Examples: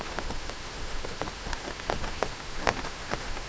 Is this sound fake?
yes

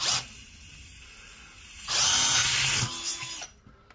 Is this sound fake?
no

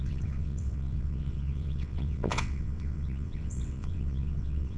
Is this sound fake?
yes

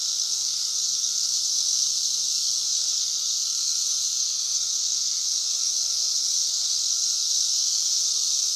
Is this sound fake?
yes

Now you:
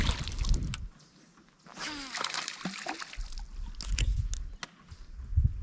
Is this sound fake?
no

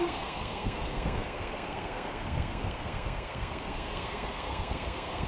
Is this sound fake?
yes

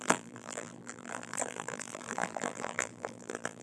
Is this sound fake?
yes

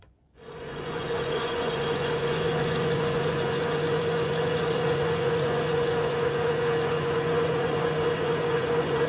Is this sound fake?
yes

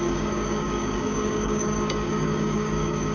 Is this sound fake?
yes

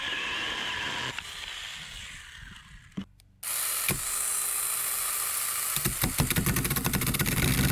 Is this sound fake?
no